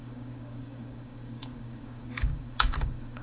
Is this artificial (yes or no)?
yes